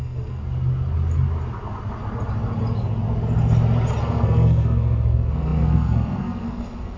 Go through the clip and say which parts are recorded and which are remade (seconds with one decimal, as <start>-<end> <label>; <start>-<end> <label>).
0.0-0.4 remade; 0.4-4.0 recorded; 4.0-7.0 remade